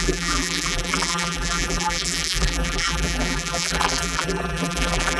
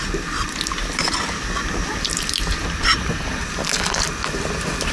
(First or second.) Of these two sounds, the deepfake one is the first